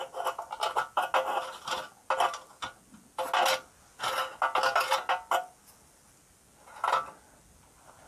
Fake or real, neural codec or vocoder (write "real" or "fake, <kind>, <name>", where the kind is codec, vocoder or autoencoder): real